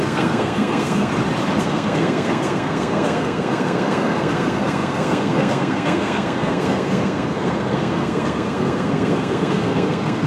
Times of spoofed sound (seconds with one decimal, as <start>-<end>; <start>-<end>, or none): 0.0-1.1; 1.6-10.3